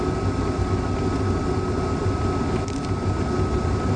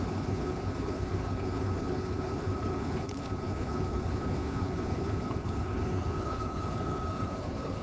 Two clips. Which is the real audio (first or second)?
first